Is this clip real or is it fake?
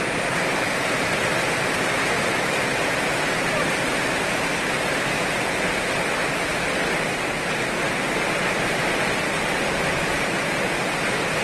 real